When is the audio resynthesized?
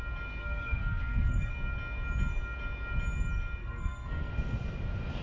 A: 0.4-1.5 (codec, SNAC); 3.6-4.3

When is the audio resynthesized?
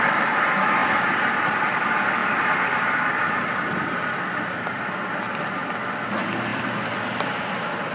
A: none